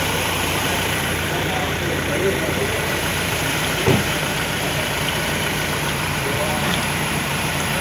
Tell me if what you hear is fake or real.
fake